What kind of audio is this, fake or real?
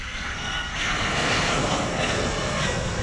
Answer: fake